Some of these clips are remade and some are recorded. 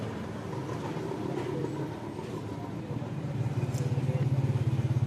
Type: recorded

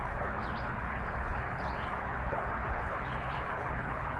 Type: remade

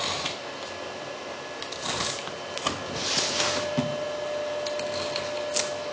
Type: recorded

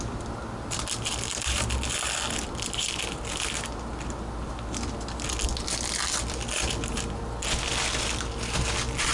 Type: recorded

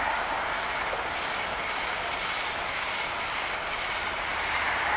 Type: recorded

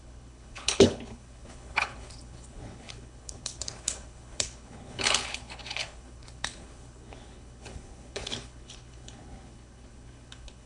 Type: remade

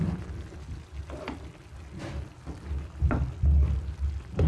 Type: recorded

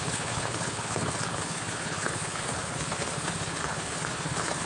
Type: remade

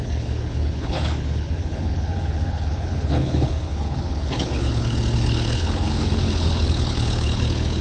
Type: remade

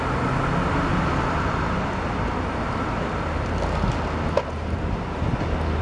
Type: recorded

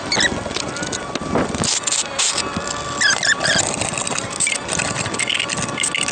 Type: recorded